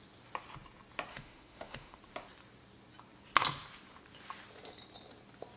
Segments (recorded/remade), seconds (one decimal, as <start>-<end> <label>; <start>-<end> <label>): 0.0-1.1 recorded; 1.1-2.0 remade; 2.0-5.6 recorded